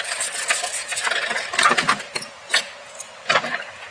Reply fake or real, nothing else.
real